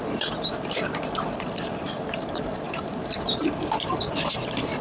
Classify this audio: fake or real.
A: fake